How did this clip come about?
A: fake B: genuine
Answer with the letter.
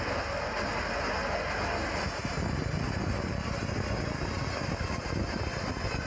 B